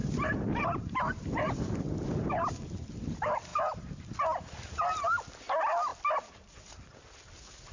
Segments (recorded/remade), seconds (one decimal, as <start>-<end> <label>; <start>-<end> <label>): 0.0-1.9 remade; 1.9-7.7 recorded